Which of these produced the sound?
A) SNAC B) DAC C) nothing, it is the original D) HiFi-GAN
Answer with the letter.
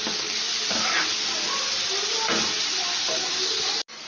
C